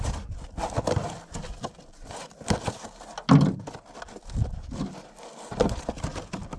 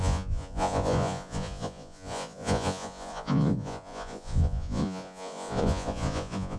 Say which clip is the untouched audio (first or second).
first